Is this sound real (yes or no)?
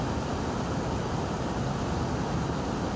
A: yes